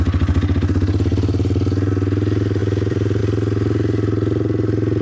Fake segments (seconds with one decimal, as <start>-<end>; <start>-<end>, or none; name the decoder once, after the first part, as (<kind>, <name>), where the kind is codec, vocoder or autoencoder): 1.1-1.9 (vocoder, BigVGAN v2); 2.6-3.2